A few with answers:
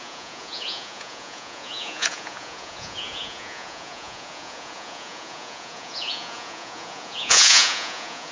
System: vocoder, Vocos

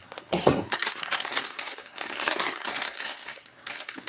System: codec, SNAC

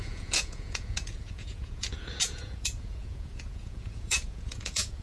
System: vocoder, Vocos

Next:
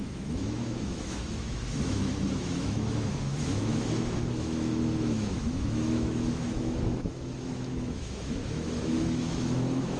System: autoencoder, DAC-VAE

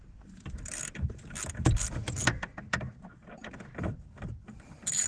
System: none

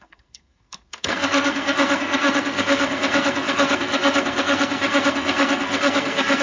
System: codec, SNAC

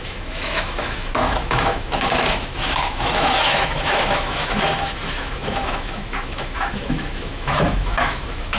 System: autoencoder, DAC-VAE